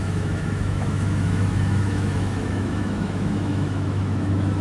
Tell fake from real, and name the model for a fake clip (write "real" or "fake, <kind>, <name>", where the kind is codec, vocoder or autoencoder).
fake, autoencoder, DAC-VAE